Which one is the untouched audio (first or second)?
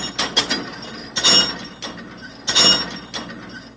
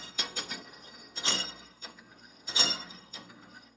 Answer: first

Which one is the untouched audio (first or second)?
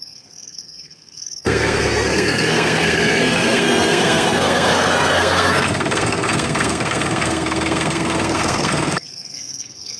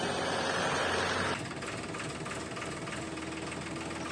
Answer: second